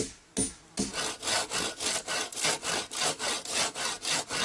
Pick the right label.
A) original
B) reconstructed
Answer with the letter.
A